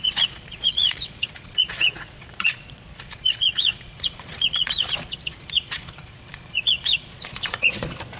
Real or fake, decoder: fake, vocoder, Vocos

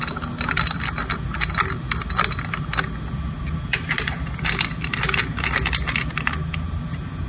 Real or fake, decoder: real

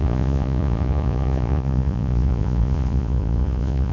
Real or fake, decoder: fake, vocoder, Vocos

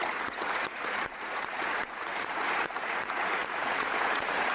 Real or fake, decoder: fake, vocoder, Vocos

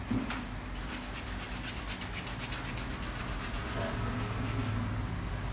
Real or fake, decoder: real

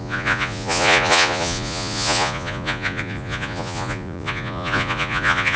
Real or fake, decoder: fake, vocoder, Vocos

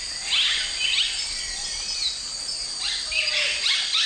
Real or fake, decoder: real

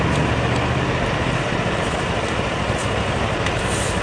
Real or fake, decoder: real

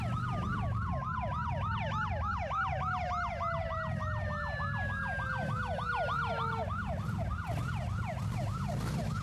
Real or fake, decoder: real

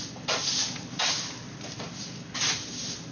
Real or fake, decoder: real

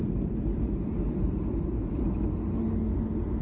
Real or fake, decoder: real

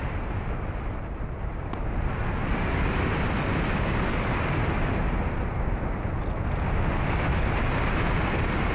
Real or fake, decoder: real